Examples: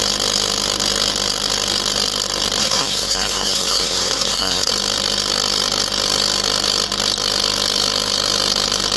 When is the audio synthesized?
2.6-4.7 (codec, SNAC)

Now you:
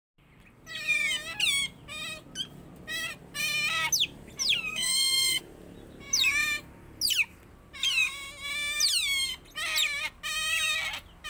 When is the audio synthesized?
4.7-5.4 (codec, SNAC)

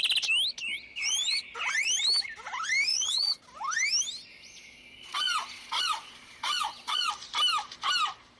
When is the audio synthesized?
2.9-3.4 (vocoder, Vocos); 4.3-7.1

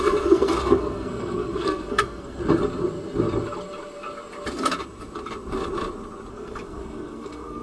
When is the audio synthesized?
0.0-2.4 (codec, SNAC); 6.3-7.6

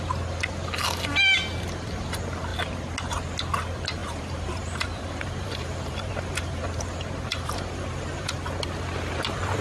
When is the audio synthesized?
4.0-6.8 (vocoder, BigVGAN v2); 7.3-8.3

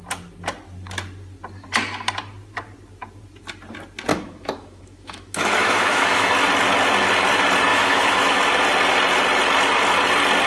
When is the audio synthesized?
4.1-6.3 (autoencoder, DAC-VAE); 7.7-8.4